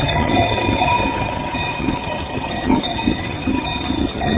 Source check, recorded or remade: remade